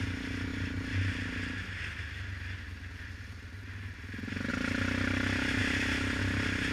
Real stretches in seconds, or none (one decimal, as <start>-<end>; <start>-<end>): 0.0-5.6; 6.2-6.7